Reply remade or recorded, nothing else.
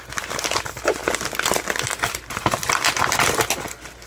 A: recorded